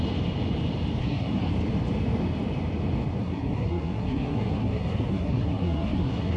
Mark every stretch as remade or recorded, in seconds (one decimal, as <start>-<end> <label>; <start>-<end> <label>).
0.0-1.0 recorded; 1.0-1.5 remade; 1.5-3.2 recorded; 3.2-6.4 remade

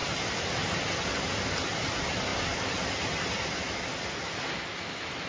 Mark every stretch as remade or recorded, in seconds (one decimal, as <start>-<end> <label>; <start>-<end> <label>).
0.0-5.3 recorded